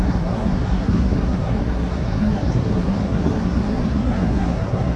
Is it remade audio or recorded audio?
remade